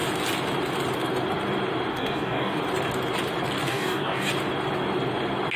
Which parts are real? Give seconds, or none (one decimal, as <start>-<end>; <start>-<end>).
0.0-1.9; 2.6-3.7; 4.3-5.6